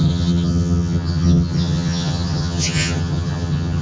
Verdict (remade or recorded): remade